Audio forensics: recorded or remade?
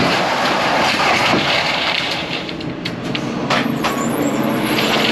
remade